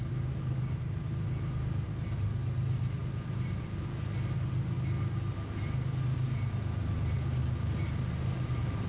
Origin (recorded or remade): recorded